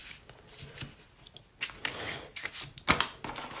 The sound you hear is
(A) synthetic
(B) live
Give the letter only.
B